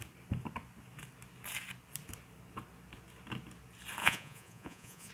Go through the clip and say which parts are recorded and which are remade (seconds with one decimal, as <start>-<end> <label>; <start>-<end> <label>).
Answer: 0.0-4.0 recorded; 4.0-5.1 remade